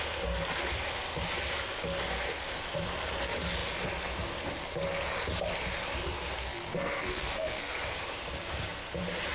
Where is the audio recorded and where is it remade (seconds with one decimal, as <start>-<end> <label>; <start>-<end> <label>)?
0.0-6.4 recorded; 6.4-7.7 remade; 7.7-9.3 recorded